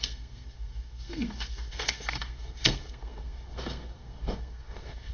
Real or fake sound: fake